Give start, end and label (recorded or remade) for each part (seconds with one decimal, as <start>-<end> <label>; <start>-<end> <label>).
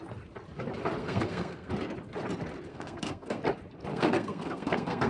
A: 0.0-1.0 recorded; 1.0-1.7 remade; 1.7-2.7 recorded; 2.7-3.4 remade; 3.4-3.9 recorded; 3.9-5.1 remade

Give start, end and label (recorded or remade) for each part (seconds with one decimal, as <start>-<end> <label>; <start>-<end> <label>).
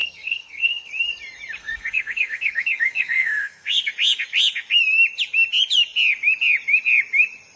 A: 0.0-0.9 remade; 0.9-1.6 recorded; 1.6-3.9 remade; 3.9-7.6 recorded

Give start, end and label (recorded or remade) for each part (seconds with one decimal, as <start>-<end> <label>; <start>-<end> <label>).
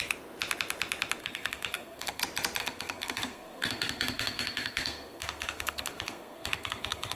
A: 0.0-1.2 recorded; 1.2-2.2 remade; 2.2-2.6 recorded; 2.6-7.2 remade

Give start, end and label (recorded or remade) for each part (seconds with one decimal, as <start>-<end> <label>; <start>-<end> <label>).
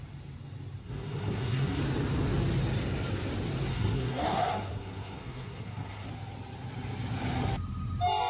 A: 0.0-0.8 recorded; 0.8-1.8 remade; 1.8-3.7 recorded; 3.7-6.1 remade; 6.1-8.3 recorded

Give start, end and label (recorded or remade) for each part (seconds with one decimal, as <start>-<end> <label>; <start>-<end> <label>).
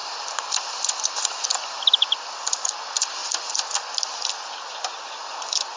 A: 0.0-5.8 recorded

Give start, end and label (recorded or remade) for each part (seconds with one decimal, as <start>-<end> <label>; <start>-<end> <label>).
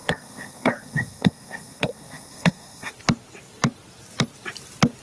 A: 0.0-2.9 remade; 2.9-5.0 recorded